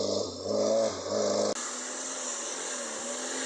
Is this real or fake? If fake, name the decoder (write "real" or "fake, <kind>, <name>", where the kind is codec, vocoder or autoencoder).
real